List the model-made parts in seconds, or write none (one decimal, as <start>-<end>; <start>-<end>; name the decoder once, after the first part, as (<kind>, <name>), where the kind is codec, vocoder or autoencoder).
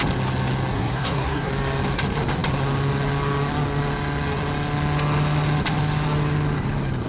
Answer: 0.7-1.5 (codec, SNAC)